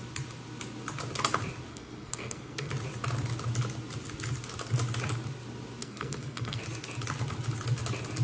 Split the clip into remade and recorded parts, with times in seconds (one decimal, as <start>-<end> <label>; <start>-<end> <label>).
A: 0.0-1.7 recorded; 1.7-2.7 remade; 2.7-5.8 recorded; 5.8-6.6 remade; 6.6-8.2 recorded